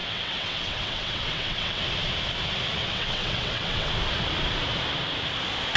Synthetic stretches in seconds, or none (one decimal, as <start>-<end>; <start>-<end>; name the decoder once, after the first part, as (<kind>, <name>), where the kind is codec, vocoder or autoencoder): 0.0-1.8 (vocoder, WaveNeXt); 2.8-3.9

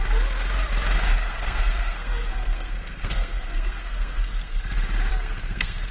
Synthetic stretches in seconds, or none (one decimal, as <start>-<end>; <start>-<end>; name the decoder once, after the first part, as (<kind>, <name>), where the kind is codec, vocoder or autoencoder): 1.1-4.6 (codec, SNAC); 5.1-5.9

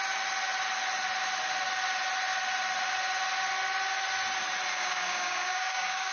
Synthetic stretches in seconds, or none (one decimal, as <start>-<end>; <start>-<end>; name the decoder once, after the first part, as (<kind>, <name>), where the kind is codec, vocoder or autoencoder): 4.7-6.1 (codec, DAC)